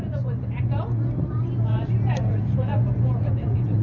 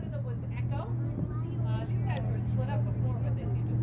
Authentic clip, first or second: second